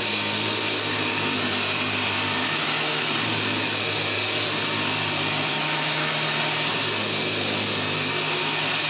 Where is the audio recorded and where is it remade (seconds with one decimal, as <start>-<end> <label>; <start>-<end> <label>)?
0.0-2.4 recorded; 2.4-3.1 remade; 3.1-5.5 recorded; 5.5-6.1 remade; 6.1-8.9 recorded